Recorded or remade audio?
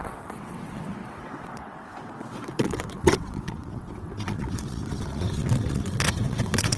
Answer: remade